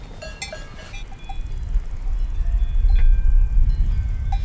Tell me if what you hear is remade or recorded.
recorded